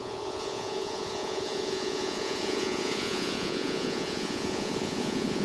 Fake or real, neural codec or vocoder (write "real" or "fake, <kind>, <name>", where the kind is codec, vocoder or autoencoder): fake, vocoder, Vocos